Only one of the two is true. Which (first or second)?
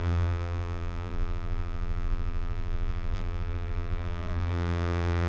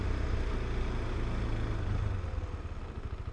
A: second